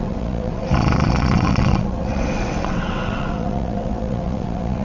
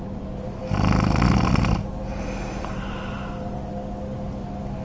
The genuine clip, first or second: second